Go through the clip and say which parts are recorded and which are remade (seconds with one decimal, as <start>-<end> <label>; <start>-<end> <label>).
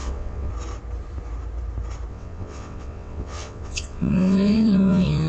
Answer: 0.0-0.5 remade; 0.5-2.1 recorded; 2.1-5.3 remade